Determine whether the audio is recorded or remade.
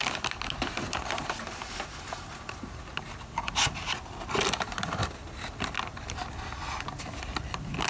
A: recorded